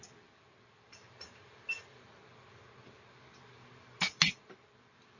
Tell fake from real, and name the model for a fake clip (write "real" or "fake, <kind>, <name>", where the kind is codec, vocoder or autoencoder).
real